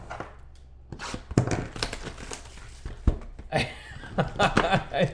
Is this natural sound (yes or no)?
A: yes